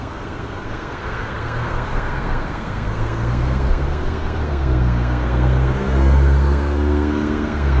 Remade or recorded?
remade